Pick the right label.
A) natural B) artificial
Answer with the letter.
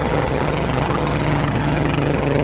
B